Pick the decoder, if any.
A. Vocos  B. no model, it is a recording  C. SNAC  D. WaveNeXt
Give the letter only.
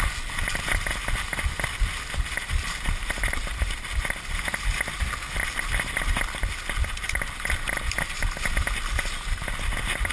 B